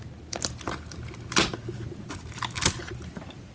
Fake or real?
real